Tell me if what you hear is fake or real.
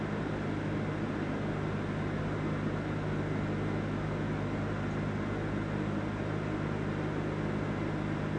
real